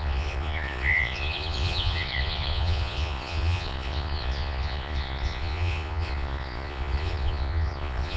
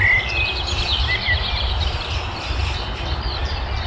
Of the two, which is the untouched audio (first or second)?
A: second